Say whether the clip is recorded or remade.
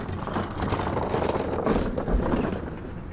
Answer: recorded